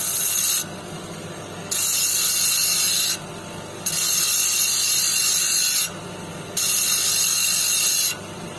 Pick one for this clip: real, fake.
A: real